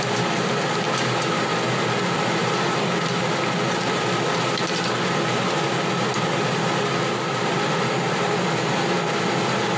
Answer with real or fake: real